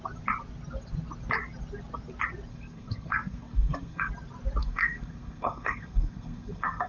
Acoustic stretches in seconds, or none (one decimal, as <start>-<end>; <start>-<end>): 0.0-2.5; 4.1-4.6